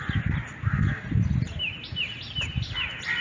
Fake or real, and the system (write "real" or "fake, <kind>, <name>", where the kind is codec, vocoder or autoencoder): real